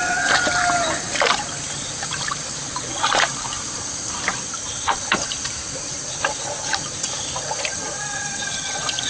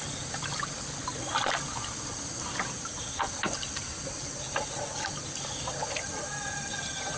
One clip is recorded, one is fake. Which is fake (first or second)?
first